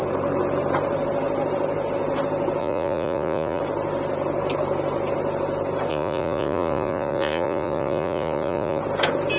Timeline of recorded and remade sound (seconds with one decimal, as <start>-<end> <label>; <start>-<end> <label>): 0.0-2.6 recorded; 2.6-3.6 remade; 3.6-5.9 recorded; 5.9-8.8 remade; 8.8-9.4 recorded